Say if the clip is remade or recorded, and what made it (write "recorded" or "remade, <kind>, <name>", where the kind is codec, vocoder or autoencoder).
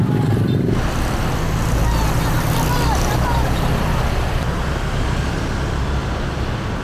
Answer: recorded